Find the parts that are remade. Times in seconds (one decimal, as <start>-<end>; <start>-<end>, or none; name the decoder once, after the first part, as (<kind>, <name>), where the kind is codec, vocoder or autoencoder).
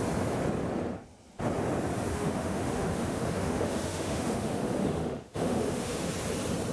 2.1-6.1 (autoencoder, DAC-VAE)